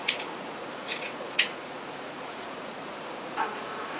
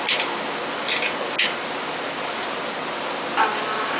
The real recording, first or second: second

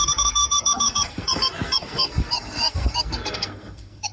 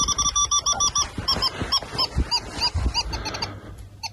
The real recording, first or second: second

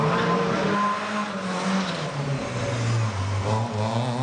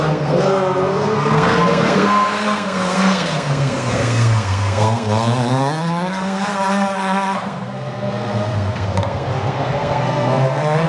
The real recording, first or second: first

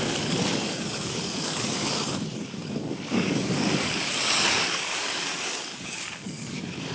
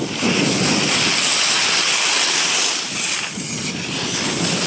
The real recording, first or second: second